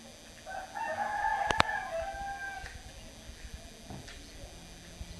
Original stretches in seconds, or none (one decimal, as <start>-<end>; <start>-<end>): 0.0-5.2